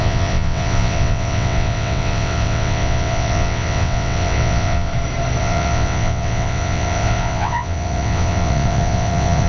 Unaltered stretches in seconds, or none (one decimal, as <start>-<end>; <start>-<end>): 4.9-5.4